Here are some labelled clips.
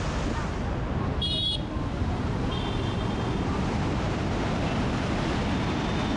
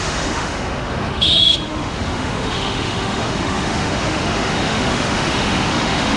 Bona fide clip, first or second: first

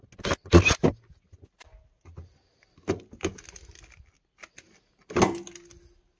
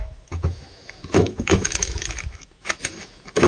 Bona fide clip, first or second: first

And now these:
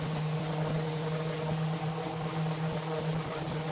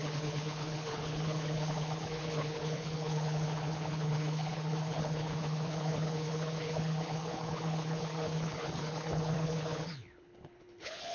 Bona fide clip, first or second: first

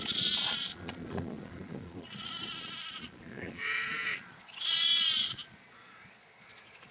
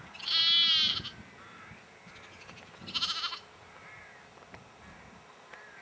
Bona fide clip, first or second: second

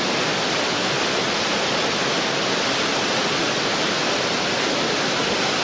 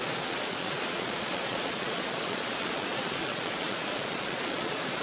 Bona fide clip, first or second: first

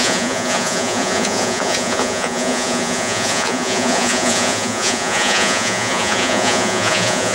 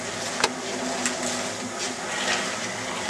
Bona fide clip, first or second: second